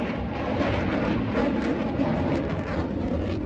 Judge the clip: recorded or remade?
recorded